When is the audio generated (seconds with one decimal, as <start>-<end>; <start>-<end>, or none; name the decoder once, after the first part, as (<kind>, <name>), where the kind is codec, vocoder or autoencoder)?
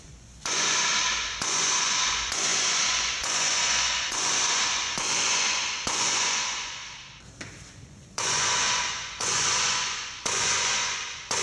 0.0-6.8 (vocoder, Vocos); 7.7-11.4